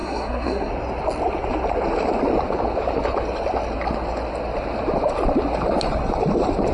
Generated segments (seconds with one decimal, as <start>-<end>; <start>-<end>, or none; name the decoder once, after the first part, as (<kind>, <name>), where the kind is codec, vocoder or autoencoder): 0.0-0.7 (codec, SNAC)